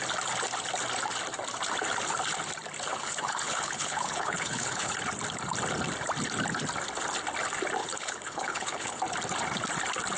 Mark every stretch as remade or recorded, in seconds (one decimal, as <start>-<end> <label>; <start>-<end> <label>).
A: 0.0-2.9 recorded; 2.9-4.9 remade; 4.9-7.8 recorded; 7.8-9.0 remade; 9.0-10.2 recorded